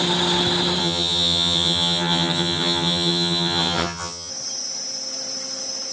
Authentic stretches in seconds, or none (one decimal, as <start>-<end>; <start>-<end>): 0.0-0.8; 4.3-5.9